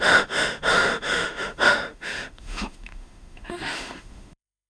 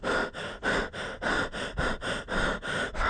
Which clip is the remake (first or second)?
first